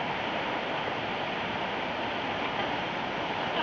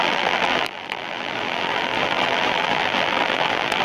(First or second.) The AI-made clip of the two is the second